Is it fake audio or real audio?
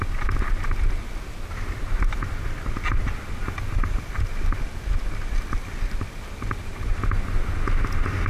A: real